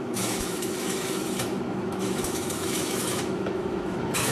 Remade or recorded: remade